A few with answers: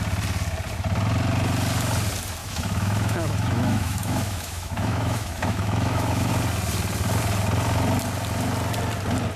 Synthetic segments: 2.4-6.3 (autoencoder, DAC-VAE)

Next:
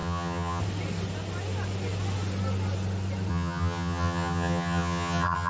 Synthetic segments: 0.0-0.6 (vocoder, HiFi-GAN); 3.3-5.5

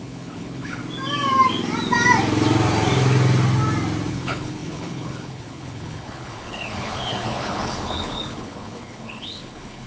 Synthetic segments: 0.0-0.8 (codec, HILCodec); 4.1-9.9

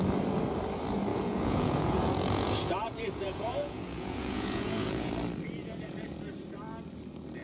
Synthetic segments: 1.1-5.1 (vocoder, Vocos); 5.6-6.1

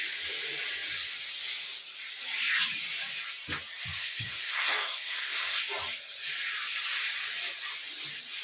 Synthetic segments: 4.0-5.6 (codec, SNAC)

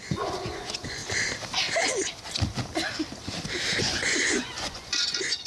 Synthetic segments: 0.0-1.0 (vocoder, Vocos); 3.8-5.5

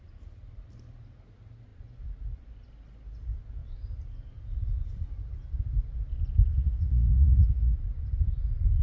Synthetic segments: 6.5-7.7 (vocoder, Vocos)